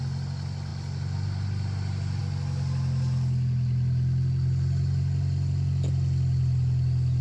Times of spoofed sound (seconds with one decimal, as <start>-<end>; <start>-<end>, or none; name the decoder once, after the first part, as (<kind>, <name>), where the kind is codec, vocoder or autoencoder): none